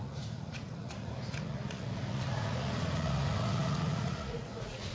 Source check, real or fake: fake